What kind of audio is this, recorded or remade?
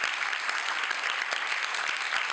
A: recorded